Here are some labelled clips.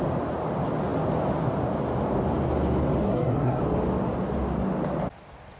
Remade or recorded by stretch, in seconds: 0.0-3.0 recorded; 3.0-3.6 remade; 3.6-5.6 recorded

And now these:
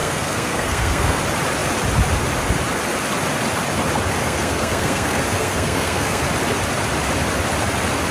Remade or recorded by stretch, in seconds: 0.0-1.2 remade; 1.2-4.2 recorded; 4.2-6.2 remade; 6.2-8.1 recorded